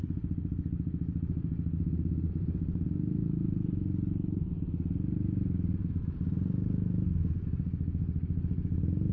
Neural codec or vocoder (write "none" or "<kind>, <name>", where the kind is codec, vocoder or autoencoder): none